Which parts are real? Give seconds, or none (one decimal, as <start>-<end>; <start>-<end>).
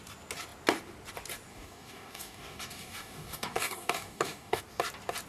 0.0-1.5; 4.6-5.3